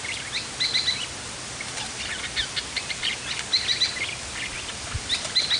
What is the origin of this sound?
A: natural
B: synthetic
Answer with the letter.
A